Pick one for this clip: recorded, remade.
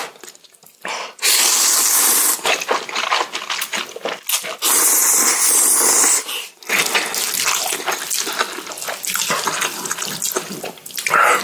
recorded